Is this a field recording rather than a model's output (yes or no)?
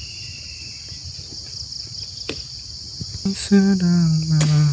yes